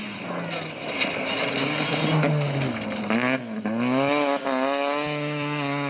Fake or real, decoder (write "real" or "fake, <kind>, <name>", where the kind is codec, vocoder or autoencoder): real